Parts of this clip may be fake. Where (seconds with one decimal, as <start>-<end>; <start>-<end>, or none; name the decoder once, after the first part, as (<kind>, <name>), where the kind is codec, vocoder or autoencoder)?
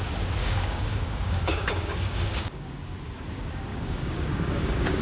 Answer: 0.4-2.8 (codec, DAC); 3.7-5.0